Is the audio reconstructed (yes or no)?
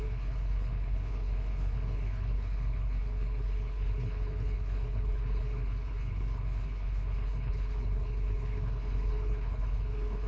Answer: yes